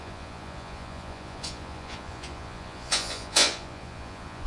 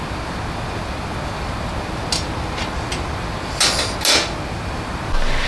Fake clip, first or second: first